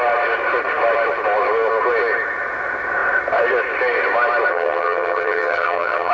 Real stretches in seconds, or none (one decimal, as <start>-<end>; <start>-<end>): 0.0-4.5